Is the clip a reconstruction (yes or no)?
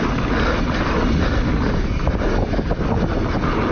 no